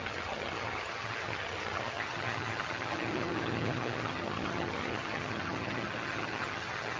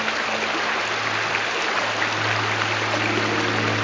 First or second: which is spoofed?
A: first